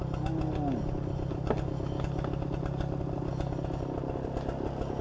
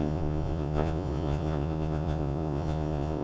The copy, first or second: second